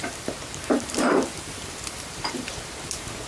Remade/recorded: remade